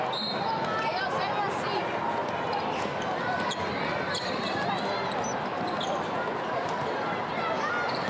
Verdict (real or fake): real